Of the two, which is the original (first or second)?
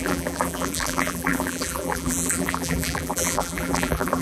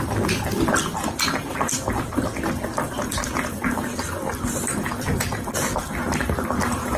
second